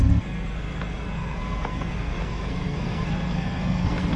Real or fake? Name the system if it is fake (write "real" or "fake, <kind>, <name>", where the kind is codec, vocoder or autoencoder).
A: fake, codec, SNAC